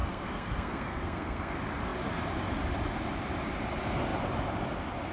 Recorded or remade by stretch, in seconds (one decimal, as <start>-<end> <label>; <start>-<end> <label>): 0.0-1.5 remade; 1.5-5.1 recorded